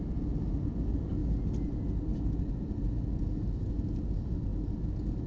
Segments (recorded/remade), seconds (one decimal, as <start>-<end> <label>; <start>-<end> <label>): 0.0-5.3 recorded